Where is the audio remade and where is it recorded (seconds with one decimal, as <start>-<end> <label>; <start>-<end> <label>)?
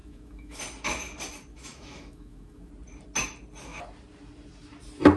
0.0-0.6 remade; 0.6-1.5 recorded; 1.5-2.7 remade; 2.7-5.2 recorded